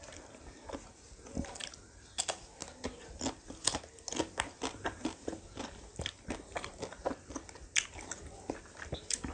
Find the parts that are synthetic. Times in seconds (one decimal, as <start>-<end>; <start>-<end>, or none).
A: none